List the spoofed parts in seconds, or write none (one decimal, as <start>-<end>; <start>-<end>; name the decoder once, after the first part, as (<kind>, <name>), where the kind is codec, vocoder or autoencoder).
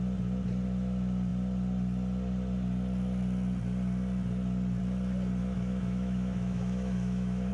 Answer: 5.4-7.5 (autoencoder, DAC-VAE)